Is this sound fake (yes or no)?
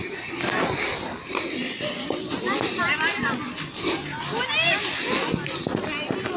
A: no